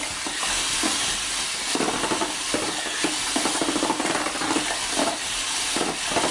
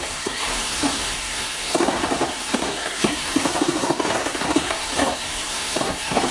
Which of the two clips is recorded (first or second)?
first